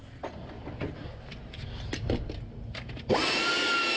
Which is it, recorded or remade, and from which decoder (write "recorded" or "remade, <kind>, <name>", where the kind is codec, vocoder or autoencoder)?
recorded